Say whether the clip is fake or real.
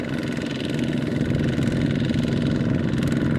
real